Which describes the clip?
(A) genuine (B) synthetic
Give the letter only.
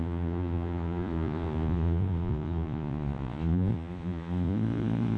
B